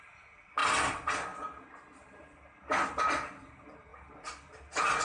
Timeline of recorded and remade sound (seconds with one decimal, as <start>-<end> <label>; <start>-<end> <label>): 0.0-5.0 recorded